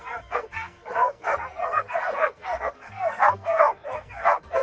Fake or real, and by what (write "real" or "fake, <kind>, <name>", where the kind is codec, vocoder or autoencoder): fake, codec, SNAC